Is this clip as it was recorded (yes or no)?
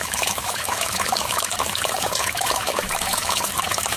no